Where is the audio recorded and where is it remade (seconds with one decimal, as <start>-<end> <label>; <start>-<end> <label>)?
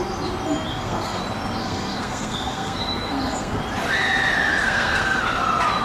0.0-0.7 recorded; 0.7-1.2 remade; 1.2-1.6 recorded; 1.6-3.6 remade; 3.6-4.6 recorded; 4.6-5.2 remade; 5.2-5.8 recorded